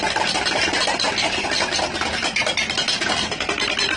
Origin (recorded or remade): recorded